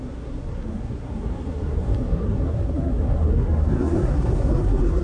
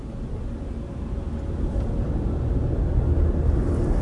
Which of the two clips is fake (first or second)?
first